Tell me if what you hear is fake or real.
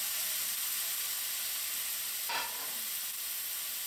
real